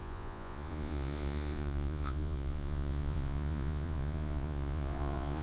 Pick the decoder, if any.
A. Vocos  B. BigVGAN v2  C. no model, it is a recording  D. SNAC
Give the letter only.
A